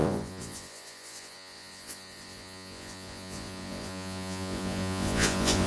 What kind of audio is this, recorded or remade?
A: remade